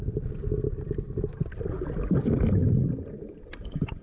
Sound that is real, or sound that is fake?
real